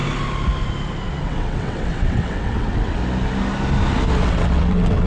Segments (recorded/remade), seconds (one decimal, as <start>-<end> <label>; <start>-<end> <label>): 0.0-1.2 recorded; 1.2-3.0 remade; 3.0-4.2 recorded; 4.2-5.1 remade